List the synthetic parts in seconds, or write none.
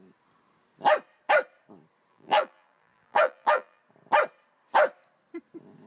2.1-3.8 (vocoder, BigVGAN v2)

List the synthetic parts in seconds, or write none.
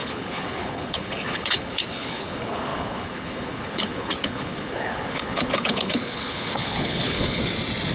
0.0-7.4 (codec, HILCodec)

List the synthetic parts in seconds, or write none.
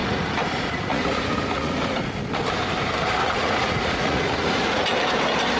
0.0-2.1 (vocoder, Vocos); 3.2-4.8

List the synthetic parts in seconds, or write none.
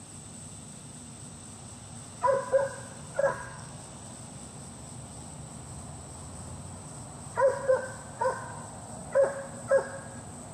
3.2-3.7 (codec, SNAC)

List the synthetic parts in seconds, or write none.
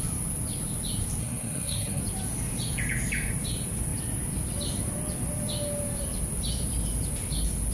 1.2-2.0 (codec, SNAC)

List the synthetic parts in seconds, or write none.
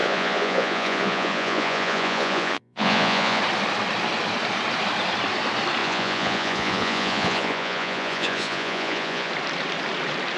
0.0-3.4 (vocoder, Vocos); 5.8-9.3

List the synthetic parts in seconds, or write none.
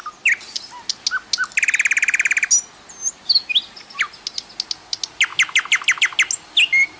none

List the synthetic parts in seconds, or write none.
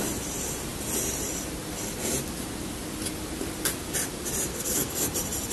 4.5-5.1 (codec, SNAC)